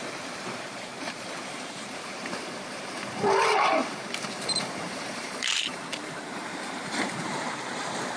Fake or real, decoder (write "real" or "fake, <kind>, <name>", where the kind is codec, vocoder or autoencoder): fake, vocoder, BigVGAN v2